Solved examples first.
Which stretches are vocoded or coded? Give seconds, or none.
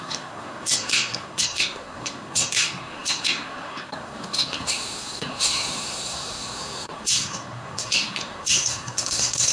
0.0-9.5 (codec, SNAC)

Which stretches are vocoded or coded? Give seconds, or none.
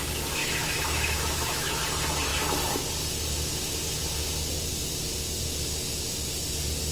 0.4-1.8 (autoencoder, DAC-VAE)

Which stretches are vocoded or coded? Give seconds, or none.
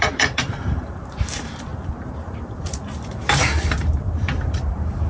0.0-5.1 (vocoder, BigVGAN v2)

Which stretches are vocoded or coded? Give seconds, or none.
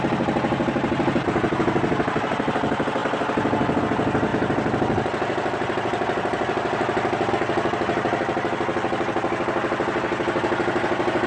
none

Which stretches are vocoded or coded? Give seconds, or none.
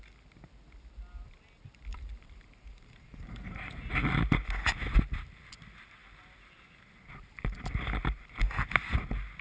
1.9-3.9 (vocoder, BigVGAN v2)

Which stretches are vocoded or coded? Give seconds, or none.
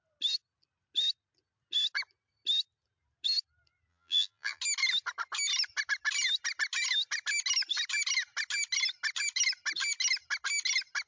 3.9-4.6 (vocoder, BigVGAN v2)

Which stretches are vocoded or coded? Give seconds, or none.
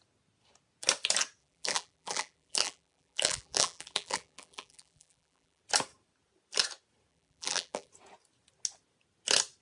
1.4-5.6 (vocoder, BigVGAN v2); 7.1-7.9